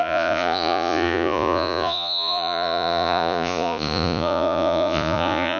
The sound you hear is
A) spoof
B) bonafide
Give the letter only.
A